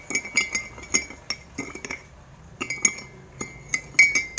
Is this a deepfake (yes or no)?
no